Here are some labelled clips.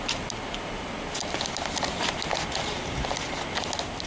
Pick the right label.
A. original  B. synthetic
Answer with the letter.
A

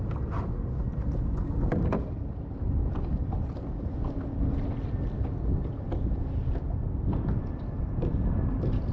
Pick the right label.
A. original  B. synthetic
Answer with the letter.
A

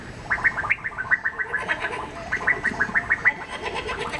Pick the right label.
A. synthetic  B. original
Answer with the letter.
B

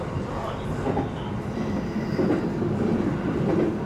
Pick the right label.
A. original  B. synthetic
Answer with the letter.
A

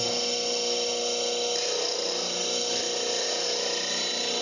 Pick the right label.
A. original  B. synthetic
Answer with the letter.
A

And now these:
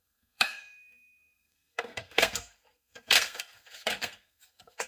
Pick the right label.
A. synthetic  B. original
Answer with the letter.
A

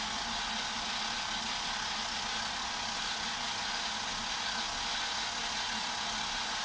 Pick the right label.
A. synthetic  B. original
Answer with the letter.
B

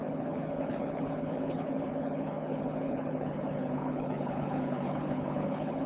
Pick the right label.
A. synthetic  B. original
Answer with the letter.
A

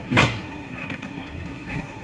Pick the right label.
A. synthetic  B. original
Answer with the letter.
A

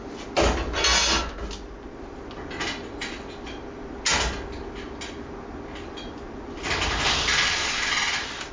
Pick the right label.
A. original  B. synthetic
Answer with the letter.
A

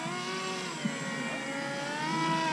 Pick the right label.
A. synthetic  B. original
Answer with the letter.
B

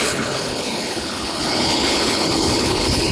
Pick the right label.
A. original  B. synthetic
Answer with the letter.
B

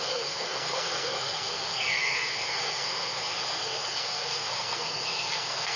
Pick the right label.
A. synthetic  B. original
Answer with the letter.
A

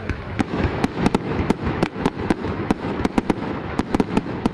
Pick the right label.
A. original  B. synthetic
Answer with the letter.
B